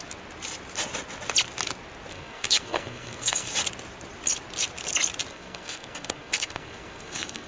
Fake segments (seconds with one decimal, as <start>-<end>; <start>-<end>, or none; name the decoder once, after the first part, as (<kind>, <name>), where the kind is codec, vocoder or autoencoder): 2.1-3.5 (codec, SNAC); 5.3-7.5